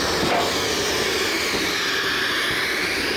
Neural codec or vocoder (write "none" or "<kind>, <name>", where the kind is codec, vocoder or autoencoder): none